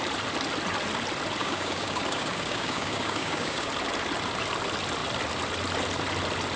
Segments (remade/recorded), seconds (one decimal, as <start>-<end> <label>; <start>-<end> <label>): 0.0-1.4 recorded; 1.4-3.7 remade; 3.7-6.6 recorded